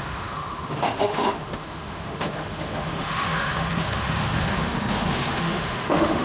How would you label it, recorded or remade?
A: remade